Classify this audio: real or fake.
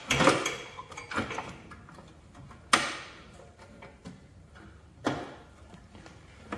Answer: real